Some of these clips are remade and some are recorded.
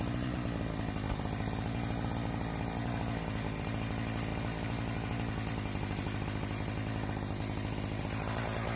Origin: recorded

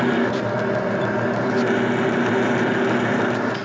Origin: recorded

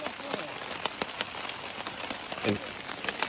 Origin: recorded